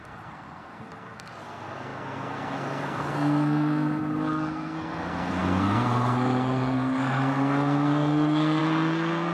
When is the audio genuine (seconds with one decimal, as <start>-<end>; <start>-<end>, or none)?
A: none